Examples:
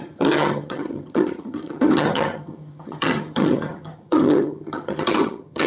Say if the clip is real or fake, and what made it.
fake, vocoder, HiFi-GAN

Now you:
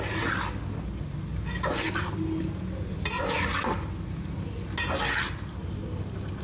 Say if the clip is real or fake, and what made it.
real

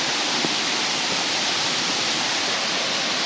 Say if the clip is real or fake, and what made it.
real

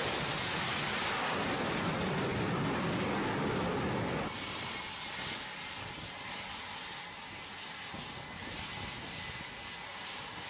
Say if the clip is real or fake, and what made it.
real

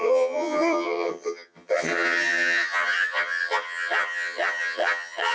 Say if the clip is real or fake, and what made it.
fake, vocoder, HiFi-GAN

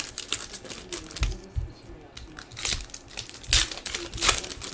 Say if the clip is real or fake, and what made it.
real